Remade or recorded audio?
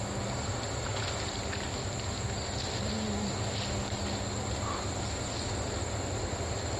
recorded